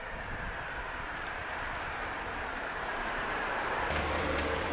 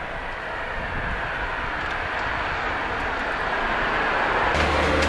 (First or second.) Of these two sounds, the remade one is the first